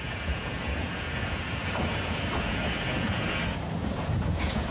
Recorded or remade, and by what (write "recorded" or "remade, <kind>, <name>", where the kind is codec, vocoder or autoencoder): remade, vocoder, Vocos